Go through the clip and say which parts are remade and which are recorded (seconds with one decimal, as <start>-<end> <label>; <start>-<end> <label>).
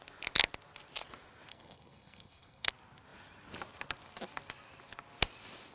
0.0-1.5 recorded; 1.5-2.7 remade; 2.7-5.7 recorded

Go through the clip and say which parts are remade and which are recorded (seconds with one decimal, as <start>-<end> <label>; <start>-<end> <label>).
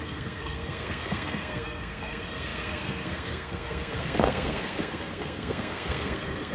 0.0-6.5 remade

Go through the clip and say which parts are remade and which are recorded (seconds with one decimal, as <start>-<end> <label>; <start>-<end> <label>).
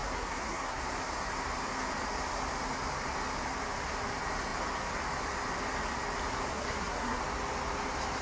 0.0-0.8 remade; 0.8-6.5 recorded; 6.5-7.2 remade; 7.2-8.2 recorded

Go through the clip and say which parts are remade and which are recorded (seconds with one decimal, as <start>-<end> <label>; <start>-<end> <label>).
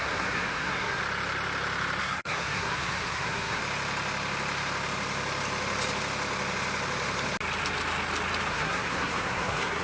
0.0-1.0 remade; 1.0-2.0 recorded; 2.0-3.6 remade; 3.6-8.5 recorded; 8.5-9.8 remade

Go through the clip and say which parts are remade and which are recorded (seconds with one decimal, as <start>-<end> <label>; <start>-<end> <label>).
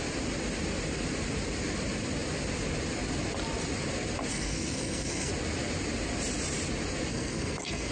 0.0-4.3 recorded; 4.3-5.3 remade; 5.3-7.1 recorded; 7.1-7.9 remade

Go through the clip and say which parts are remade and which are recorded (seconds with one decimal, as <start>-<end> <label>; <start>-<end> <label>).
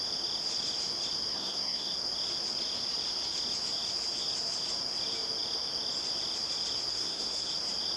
0.0-1.3 recorded; 1.3-1.9 remade; 1.9-6.9 recorded; 6.9-7.5 remade; 7.5-8.0 recorded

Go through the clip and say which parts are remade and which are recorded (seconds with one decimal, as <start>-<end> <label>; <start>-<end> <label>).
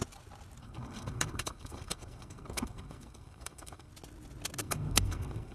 0.0-0.6 recorded; 0.6-3.9 remade; 3.9-4.6 recorded; 4.6-5.5 remade